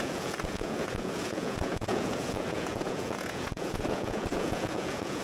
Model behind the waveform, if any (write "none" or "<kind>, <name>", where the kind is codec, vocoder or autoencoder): vocoder, Vocos